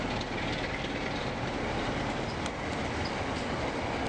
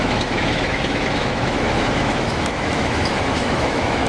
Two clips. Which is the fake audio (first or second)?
second